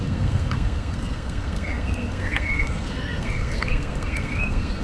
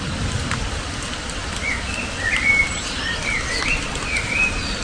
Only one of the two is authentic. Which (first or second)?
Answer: second